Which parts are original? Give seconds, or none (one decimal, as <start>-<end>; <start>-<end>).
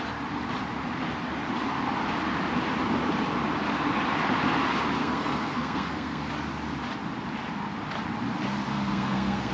0.0-5.0; 6.3-8.7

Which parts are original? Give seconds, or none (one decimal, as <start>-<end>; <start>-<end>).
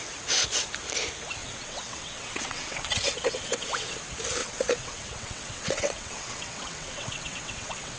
0.0-1.4; 4.0-4.4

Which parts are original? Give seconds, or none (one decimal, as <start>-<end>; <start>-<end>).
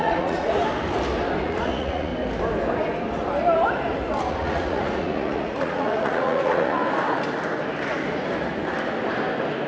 0.6-1.4; 2.1-4.3; 6.8-9.7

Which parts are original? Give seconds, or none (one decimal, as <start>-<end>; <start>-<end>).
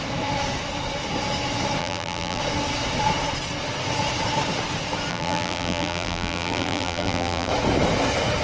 0.0-1.8; 2.4-5.1; 7.5-8.4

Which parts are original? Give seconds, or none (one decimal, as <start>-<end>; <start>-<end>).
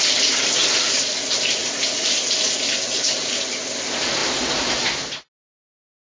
0.0-1.6; 3.4-6.0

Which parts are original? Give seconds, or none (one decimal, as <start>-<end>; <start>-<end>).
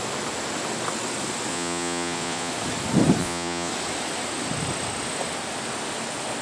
0.0-1.5; 2.5-3.2; 3.7-6.4